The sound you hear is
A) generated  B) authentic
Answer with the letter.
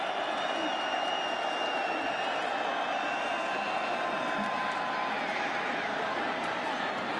B